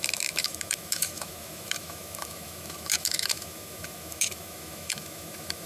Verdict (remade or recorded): remade